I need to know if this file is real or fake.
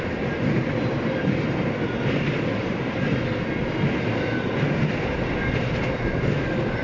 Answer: real